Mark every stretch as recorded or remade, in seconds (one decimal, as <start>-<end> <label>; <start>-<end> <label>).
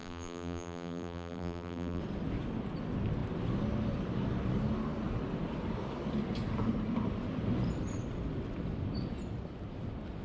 0.0-2.0 remade; 2.0-10.2 recorded